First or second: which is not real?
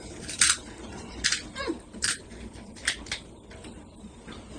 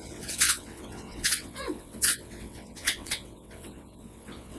second